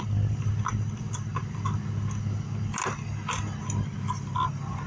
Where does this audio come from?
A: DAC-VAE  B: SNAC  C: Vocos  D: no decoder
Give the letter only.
D